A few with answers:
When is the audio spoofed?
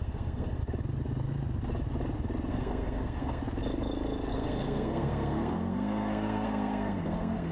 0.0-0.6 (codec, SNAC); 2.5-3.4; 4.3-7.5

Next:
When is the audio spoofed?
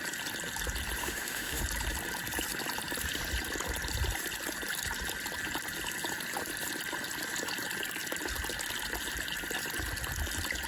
1.0-1.6 (autoencoder, DAC-VAE)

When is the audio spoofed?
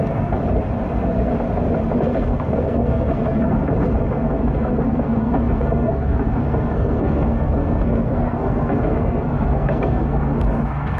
0.0-0.4 (codec, SNAC); 0.9-1.3; 2.0-11.0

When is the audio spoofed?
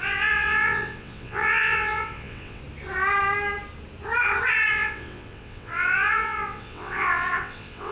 0.0-2.6 (vocoder, WaveNeXt); 4.7-7.9